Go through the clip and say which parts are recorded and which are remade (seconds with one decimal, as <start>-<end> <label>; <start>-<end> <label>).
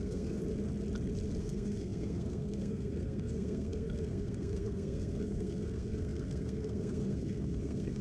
0.0-0.4 remade; 0.4-1.4 recorded; 1.4-8.0 remade